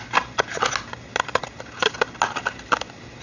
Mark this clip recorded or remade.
recorded